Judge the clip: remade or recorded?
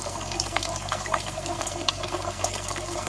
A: remade